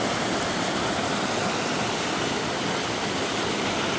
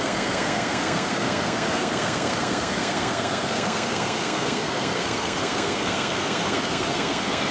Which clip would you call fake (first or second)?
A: second